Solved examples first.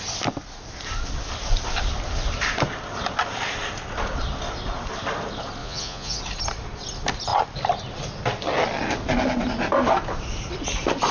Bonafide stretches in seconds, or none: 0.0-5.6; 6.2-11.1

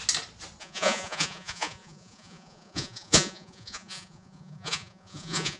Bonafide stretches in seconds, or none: 0.0-0.6